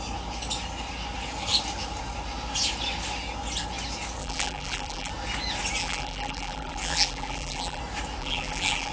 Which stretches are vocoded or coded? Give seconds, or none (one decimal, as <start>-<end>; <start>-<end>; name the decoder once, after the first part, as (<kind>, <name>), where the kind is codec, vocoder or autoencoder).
4.2-5.1 (vocoder, BigVGAN v2); 5.8-7.8; 8.2-8.9